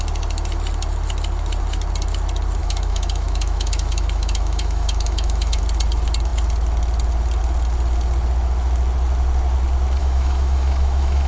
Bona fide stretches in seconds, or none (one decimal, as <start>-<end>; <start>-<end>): 0.0-2.6; 5.6-10.0